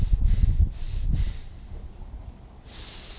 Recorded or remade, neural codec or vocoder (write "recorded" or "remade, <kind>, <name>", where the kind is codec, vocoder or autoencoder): recorded